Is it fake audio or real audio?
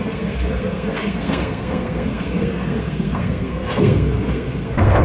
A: fake